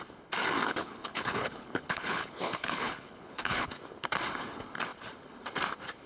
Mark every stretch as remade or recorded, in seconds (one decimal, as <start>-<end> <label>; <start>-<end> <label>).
0.0-0.6 recorded; 0.6-3.7 remade; 3.7-6.1 recorded